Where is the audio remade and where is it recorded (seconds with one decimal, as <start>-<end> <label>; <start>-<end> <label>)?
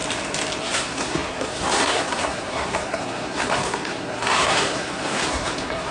0.0-0.6 recorded; 0.6-5.9 remade